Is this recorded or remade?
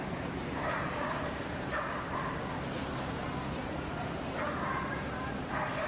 remade